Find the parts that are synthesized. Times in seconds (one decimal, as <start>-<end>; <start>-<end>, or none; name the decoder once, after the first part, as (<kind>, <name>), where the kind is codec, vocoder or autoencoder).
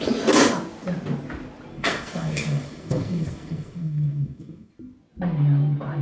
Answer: 1.7-4.7 (codec, SNAC)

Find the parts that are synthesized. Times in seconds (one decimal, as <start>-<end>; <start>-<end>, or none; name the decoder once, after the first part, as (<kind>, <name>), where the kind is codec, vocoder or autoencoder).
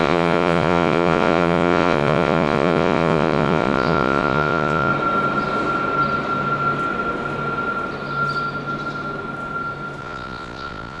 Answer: 0.0-4.9 (vocoder, Vocos); 10.0-11.0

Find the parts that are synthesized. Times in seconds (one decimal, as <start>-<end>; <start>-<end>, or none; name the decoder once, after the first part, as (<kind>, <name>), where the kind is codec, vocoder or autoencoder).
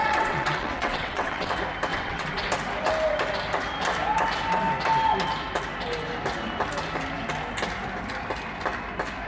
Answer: 0.0-1.5 (vocoder, WaveNeXt); 1.9-2.5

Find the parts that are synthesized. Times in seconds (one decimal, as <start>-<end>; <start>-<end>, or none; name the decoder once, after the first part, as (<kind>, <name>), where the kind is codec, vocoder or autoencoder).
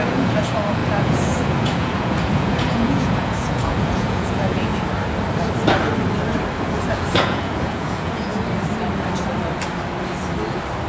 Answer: 0.0-4.7 (vocoder, Vocos); 6.6-8.3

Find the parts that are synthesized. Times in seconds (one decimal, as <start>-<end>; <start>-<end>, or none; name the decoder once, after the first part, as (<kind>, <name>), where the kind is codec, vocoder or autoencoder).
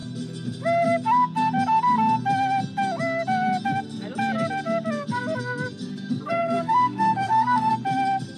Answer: 5.9-7.7 (codec, SNAC)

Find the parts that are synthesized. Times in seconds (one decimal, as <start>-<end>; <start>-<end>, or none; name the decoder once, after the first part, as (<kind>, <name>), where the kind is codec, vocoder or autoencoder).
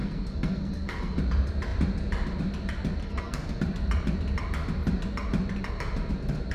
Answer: 0.0-1.2 (codec, SNAC); 3.0-3.6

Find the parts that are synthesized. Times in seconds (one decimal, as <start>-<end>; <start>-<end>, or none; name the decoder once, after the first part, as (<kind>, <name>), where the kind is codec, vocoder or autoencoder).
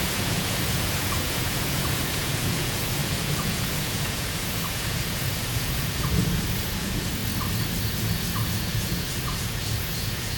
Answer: 0.0-7.2 (vocoder, Vocos); 7.8-10.4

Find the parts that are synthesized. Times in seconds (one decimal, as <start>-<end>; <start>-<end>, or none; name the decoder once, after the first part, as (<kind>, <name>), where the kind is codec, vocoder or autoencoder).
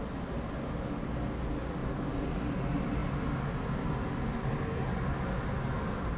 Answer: none